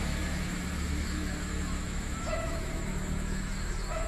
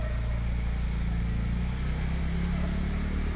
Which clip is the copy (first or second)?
first